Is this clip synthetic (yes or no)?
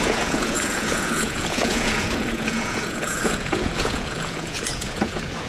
yes